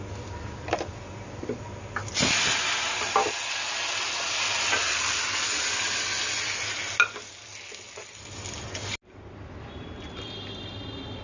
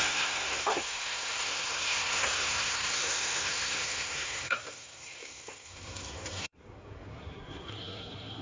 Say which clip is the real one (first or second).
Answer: first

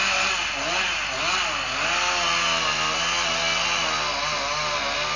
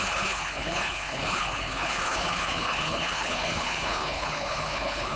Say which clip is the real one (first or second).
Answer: first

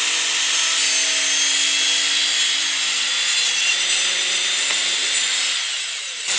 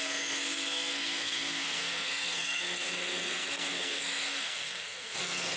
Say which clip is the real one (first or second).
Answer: first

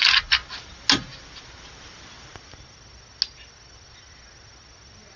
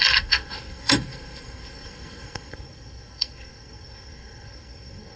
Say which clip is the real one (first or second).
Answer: first